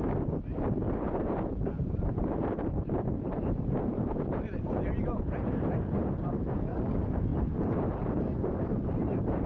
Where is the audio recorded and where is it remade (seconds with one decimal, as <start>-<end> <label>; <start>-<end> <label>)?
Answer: 0.0-9.5 remade